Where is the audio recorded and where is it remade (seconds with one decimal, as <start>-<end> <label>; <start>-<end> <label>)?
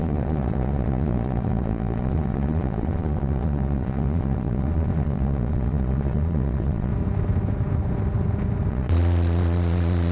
0.0-6.9 remade; 6.9-8.7 recorded; 8.7-10.1 remade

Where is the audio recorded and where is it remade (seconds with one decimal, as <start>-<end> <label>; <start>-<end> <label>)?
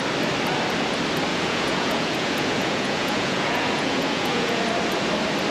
0.0-1.3 recorded; 1.3-4.6 remade; 4.6-5.5 recorded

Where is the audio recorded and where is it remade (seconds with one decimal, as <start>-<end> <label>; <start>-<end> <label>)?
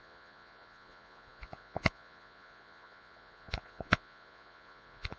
0.0-5.2 remade